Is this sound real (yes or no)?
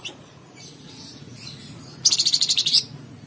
no